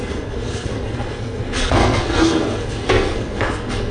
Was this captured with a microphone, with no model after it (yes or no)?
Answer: no